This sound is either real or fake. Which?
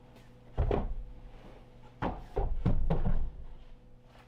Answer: real